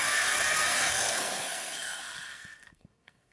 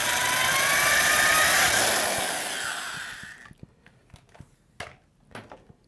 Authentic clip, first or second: second